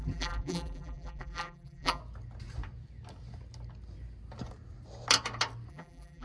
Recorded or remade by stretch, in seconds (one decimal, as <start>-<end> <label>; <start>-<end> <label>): 0.0-2.0 remade; 2.0-5.7 recorded; 5.7-6.2 remade